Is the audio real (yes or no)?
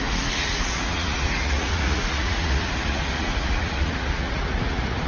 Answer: no